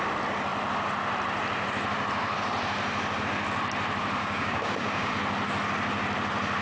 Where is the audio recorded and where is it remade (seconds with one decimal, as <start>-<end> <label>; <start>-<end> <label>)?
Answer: 0.0-4.2 recorded; 4.2-5.1 remade; 5.1-6.6 recorded